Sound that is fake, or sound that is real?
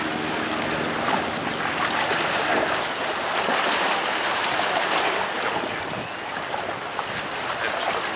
real